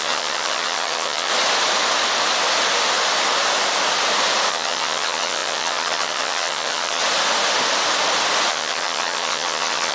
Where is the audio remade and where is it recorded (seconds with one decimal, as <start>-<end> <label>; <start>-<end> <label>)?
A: 0.0-1.3 remade; 1.3-4.5 recorded; 4.5-7.0 remade; 7.0-8.5 recorded; 8.5-9.9 remade